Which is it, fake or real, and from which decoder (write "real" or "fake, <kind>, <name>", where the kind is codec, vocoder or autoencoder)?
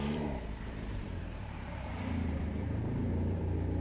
fake, vocoder, BigVGAN v2